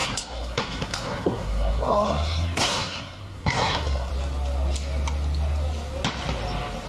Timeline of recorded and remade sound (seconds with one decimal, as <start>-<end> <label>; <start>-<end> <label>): 0.0-4.1 remade; 4.1-6.9 recorded